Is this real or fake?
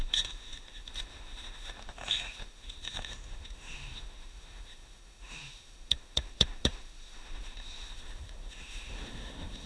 fake